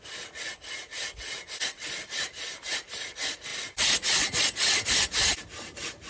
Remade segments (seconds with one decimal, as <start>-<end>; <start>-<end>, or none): none

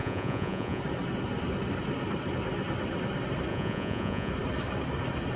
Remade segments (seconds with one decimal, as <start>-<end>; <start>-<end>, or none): 0.0-0.8; 3.5-4.3

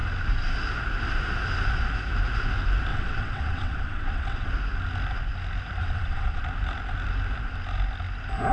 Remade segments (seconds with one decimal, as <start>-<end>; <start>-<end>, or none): 2.9-4.5; 5.8-6.4